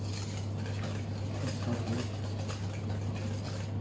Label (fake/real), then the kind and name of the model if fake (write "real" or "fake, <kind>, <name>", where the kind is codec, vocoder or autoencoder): real